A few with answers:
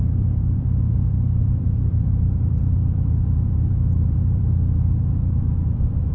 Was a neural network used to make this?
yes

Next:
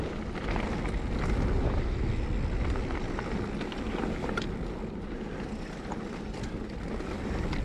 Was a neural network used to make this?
no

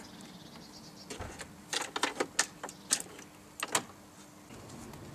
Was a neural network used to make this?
no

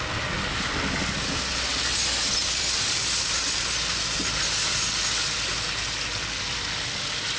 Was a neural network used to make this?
no